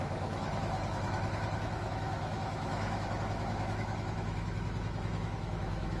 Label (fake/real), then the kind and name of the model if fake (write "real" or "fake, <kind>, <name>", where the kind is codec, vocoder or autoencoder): fake, autoencoder, DAC-VAE